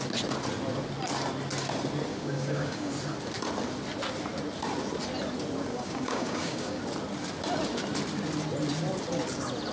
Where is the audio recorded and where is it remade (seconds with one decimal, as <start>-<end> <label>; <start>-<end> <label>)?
0.0-2.1 recorded; 2.1-2.9 remade; 2.9-5.7 recorded; 5.7-6.8 remade; 6.8-9.7 recorded